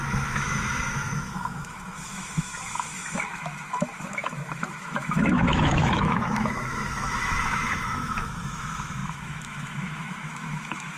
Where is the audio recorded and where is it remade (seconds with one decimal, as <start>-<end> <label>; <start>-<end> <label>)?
0.0-11.0 remade